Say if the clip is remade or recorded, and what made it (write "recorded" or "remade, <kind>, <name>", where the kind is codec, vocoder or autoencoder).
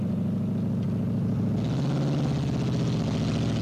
recorded